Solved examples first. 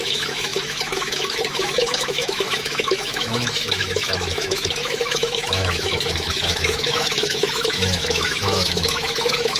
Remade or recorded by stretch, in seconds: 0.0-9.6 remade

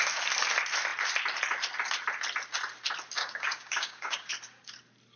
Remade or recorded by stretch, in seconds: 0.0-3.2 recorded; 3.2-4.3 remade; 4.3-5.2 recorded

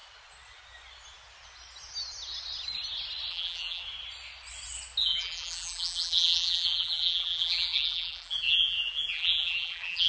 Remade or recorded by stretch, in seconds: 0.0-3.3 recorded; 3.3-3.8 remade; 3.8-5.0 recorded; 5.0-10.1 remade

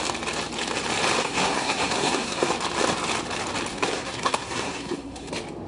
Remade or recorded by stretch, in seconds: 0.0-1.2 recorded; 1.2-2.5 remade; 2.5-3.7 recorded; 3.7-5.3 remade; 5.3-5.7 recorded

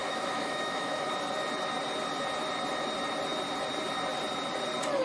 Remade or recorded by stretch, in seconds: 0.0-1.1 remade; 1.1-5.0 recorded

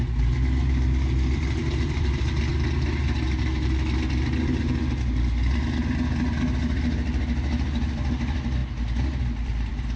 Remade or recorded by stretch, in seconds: 0.0-2.5 remade; 2.5-7.8 recorded; 7.8-8.6 remade; 8.6-9.2 recorded; 9.2-10.0 remade

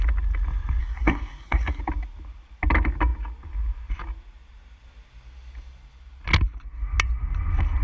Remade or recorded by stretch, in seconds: 0.0-0.8 recorded; 0.8-1.8 remade; 1.8-7.8 recorded